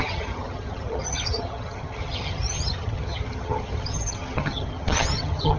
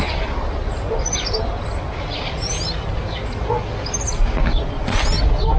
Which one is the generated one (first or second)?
first